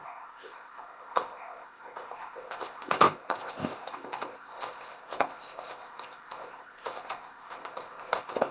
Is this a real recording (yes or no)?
no